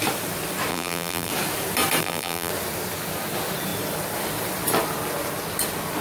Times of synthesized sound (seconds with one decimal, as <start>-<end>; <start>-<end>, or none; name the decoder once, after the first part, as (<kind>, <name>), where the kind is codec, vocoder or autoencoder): 0.7-1.3 (vocoder, BigVGAN v2); 2.0-2.5